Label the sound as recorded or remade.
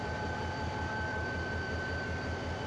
remade